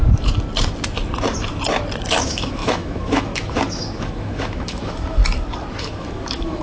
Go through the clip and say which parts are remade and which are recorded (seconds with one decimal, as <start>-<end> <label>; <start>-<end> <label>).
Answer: 0.0-2.2 recorded; 2.2-5.2 remade; 5.2-5.8 recorded; 5.8-6.6 remade